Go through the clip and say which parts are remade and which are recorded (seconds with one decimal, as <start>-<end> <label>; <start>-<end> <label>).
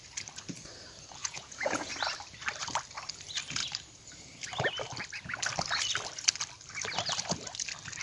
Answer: 0.0-1.2 recorded; 1.2-1.9 remade; 1.9-8.0 recorded